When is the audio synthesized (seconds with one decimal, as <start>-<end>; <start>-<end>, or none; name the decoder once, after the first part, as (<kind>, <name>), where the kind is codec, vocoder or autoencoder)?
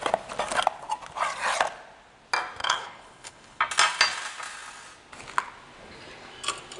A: 2.6-3.6 (codec, HILCodec)